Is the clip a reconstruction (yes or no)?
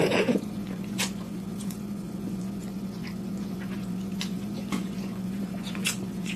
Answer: yes